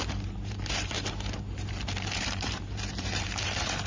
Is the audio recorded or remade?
remade